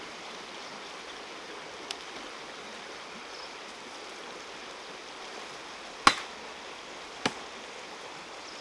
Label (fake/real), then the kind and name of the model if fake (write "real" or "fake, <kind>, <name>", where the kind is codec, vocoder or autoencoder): real